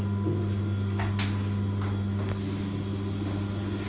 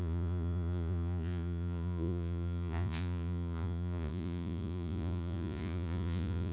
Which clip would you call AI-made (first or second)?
second